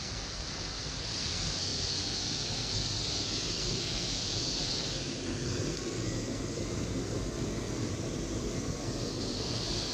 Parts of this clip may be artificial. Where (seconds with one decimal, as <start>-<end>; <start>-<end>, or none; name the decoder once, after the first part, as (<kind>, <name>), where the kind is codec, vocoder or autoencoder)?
0.0-7.9 (codec, SNAC); 8.4-9.9